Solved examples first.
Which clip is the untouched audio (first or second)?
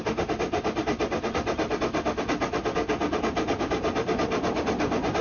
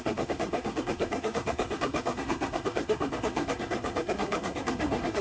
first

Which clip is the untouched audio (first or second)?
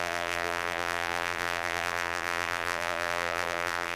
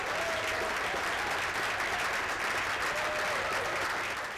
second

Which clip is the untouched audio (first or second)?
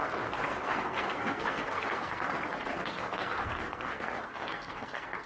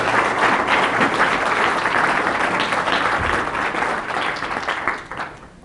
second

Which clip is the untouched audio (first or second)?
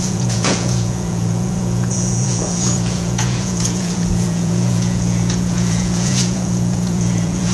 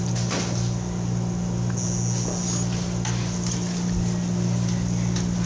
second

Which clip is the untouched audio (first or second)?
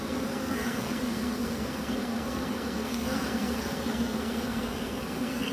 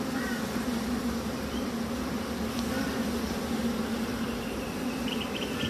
second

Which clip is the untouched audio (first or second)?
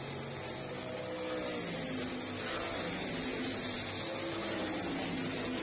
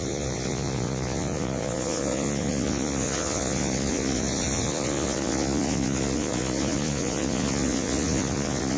first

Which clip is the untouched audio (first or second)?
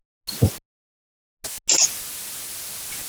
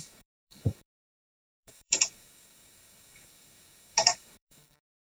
first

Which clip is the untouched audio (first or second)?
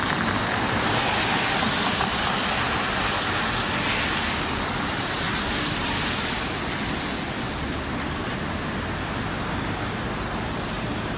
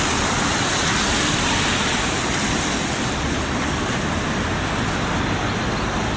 first